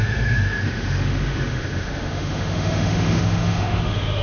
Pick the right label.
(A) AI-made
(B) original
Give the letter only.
A